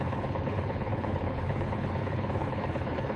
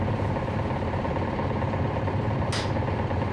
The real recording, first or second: second